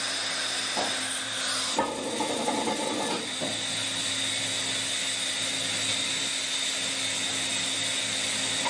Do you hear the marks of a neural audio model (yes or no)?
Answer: no